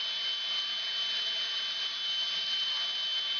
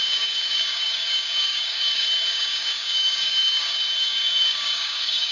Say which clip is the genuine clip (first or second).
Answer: first